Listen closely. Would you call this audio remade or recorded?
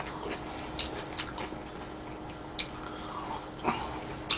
recorded